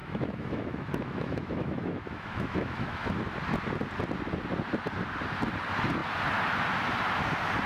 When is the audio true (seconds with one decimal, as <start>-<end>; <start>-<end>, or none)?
3.1-7.7